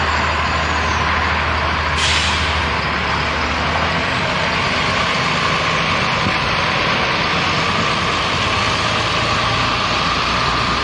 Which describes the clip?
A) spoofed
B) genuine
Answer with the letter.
B